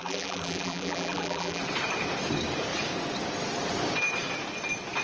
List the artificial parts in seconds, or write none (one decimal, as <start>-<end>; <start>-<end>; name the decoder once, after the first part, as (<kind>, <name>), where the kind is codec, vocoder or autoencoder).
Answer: 0.0-1.6 (vocoder, BigVGAN v2)